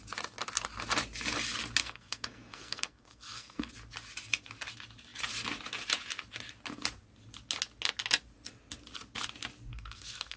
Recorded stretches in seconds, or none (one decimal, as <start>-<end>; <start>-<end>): 0.0-1.8; 3.7-9.7